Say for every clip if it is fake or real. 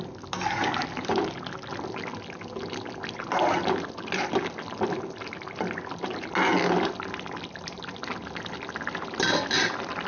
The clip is real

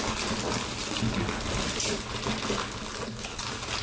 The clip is real